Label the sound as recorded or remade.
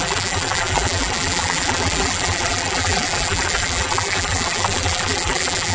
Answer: remade